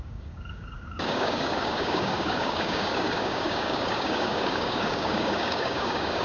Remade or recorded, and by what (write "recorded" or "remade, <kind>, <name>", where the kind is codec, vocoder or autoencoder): remade, codec, DAC